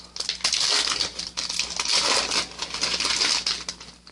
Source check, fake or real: real